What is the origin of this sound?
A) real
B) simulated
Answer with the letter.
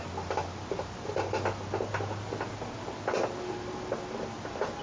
A